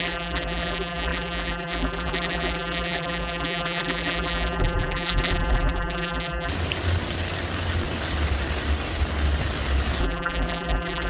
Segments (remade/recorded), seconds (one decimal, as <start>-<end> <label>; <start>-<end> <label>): 0.0-6.5 remade; 6.5-10.0 recorded; 10.0-11.1 remade